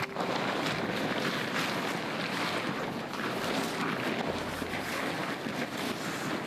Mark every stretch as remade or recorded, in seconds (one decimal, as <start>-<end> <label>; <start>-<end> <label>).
0.0-6.5 recorded